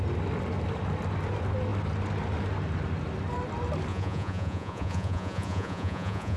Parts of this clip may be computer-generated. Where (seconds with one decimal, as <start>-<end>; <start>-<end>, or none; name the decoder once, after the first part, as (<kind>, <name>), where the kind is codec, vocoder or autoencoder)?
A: 3.9-6.4 (vocoder, Vocos)